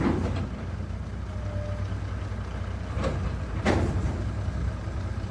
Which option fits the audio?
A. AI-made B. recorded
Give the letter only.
B